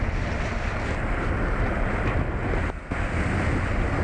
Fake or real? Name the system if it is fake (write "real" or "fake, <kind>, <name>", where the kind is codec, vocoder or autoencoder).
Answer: real